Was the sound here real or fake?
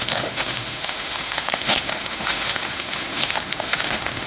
fake